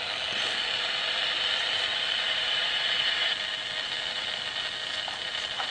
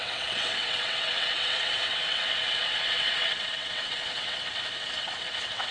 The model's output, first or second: second